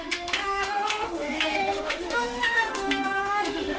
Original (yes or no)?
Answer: no